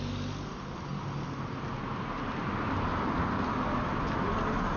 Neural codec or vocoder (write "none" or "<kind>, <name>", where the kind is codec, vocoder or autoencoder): none